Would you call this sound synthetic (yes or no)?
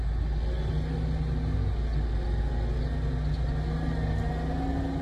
no